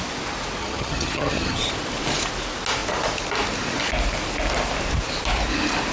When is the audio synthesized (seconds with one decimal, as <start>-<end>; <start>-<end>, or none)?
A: 0.6-1.7